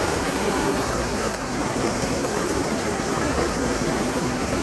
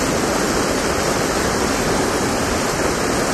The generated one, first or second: first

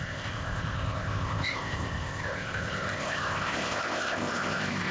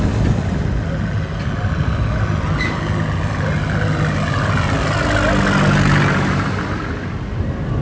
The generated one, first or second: first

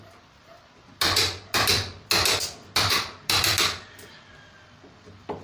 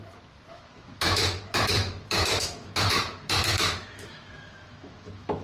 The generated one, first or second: second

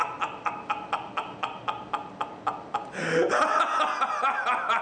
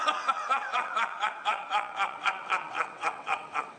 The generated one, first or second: second